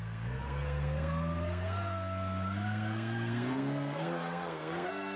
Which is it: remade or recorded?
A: remade